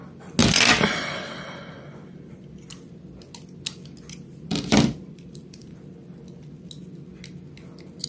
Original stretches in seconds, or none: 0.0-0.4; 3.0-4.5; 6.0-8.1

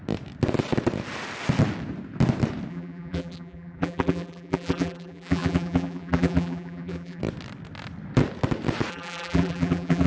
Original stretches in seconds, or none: 0.0-2.7; 7.2-8.9